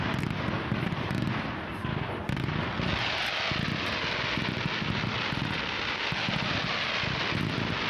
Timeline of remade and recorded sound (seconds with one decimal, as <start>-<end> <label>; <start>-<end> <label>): 0.0-7.9 recorded